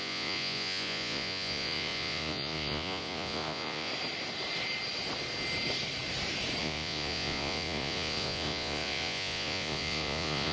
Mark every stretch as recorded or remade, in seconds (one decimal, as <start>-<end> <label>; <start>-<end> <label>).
0.0-3.9 remade; 3.9-6.6 recorded; 6.6-10.5 remade